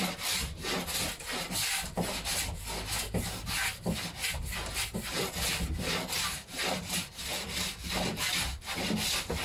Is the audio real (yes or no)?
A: yes